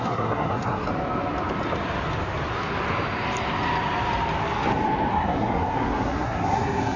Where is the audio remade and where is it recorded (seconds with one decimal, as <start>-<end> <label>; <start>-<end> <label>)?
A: 0.0-0.9 remade; 0.9-5.1 recorded; 5.1-7.0 remade